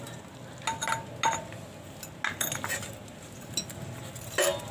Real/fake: real